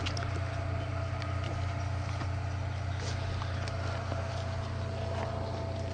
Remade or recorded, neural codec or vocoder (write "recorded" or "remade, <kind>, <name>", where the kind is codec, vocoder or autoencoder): recorded